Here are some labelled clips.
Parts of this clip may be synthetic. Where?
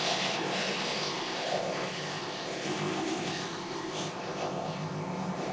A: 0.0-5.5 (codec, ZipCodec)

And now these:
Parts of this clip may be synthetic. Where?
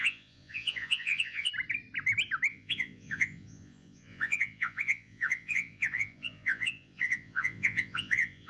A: 0.0-1.5 (vocoder, Vocos); 2.5-8.5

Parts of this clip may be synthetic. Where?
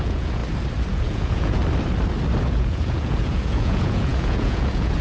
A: 0.0-0.4 (vocoder, Vocos); 0.9-1.6; 2.4-5.0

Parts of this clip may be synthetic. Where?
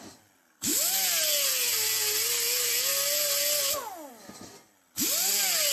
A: none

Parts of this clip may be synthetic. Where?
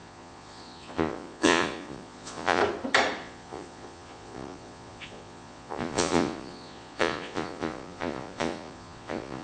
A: 0.0-2.6 (vocoder, Vocos); 3.2-9.4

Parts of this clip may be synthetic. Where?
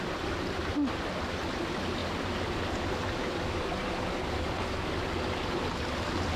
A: none